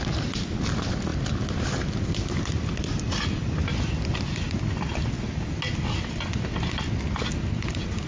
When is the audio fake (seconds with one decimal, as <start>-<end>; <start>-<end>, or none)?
none